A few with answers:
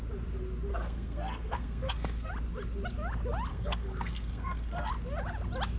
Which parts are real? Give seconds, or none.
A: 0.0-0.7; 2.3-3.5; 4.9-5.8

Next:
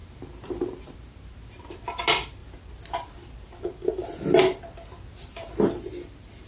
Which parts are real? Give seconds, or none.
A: 0.0-6.5

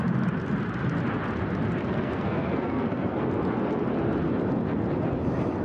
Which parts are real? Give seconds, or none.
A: 0.0-1.8; 3.3-5.6

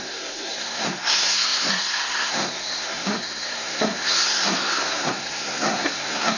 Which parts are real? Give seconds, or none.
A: none